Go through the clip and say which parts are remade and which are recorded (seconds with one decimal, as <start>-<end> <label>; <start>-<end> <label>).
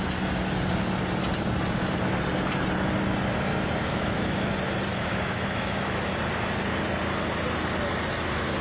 0.0-3.9 recorded; 3.9-4.5 remade; 4.5-4.9 recorded; 4.9-6.1 remade; 6.1-8.6 recorded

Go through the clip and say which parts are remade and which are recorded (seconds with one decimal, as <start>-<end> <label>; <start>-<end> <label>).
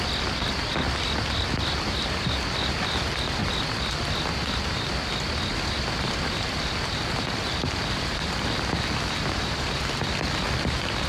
0.0-3.4 recorded; 3.4-4.2 remade; 4.2-11.1 recorded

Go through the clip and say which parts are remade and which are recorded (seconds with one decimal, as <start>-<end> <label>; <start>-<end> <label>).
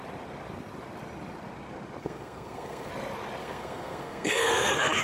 0.0-2.0 recorded; 2.0-2.9 remade; 2.9-3.4 recorded; 3.4-5.0 remade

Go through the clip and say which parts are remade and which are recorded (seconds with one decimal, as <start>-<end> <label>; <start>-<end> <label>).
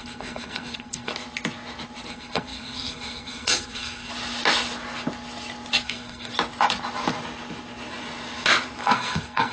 0.0-1.1 remade; 1.1-2.1 recorded; 2.1-4.1 remade; 4.1-5.8 recorded; 5.8-6.3 remade; 6.3-8.8 recorded; 8.8-9.5 remade